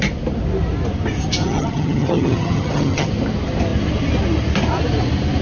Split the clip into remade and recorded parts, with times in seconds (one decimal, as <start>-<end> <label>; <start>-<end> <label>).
0.0-1.4 recorded; 1.4-3.1 remade; 3.1-5.4 recorded